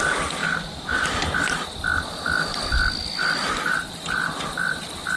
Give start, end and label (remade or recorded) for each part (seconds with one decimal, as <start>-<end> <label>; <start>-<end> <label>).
0.0-5.2 recorded

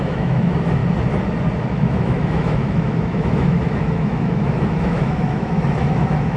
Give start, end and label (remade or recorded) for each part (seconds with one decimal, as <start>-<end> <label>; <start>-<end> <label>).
0.0-0.8 remade; 0.8-1.6 recorded; 1.6-6.4 remade

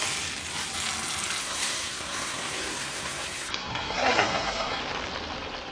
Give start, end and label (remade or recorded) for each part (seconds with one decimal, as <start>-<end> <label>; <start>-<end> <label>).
0.0-1.4 recorded; 1.4-4.8 remade; 4.8-5.7 recorded